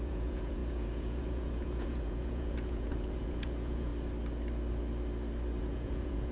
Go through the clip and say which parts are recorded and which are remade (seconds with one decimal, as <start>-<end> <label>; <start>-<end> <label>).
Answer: 0.0-3.9 remade; 3.9-5.6 recorded; 5.6-6.3 remade